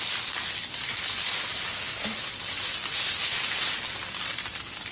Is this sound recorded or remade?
recorded